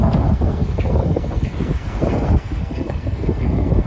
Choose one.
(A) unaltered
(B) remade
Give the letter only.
B